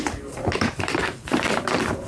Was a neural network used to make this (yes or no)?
yes